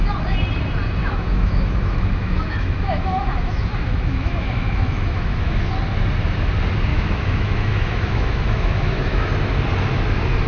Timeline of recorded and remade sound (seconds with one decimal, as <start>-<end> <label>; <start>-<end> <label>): 0.0-1.0 recorded; 1.0-5.7 remade; 5.7-6.9 recorded; 6.9-9.3 remade; 9.3-10.5 recorded